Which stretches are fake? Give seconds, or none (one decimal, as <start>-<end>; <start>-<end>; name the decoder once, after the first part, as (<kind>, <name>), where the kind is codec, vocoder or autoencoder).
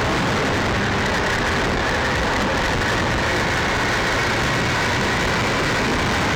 none